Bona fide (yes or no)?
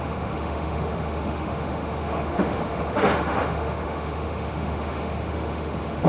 no